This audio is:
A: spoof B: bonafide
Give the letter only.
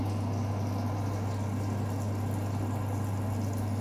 B